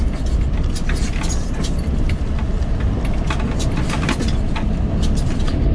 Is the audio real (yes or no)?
yes